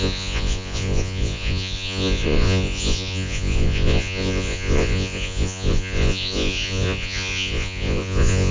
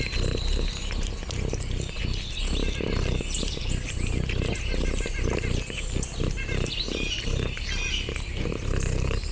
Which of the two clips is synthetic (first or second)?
first